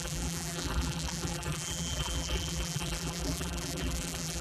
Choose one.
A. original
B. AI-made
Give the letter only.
B